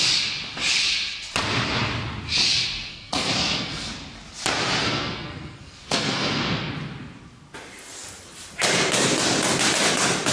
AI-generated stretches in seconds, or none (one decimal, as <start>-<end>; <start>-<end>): 2.9-3.9; 4.8-6.7